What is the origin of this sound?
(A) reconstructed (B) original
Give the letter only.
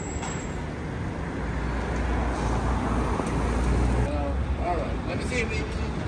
B